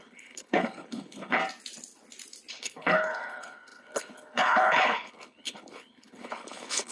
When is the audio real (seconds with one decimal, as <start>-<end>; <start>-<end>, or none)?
1.4-2.5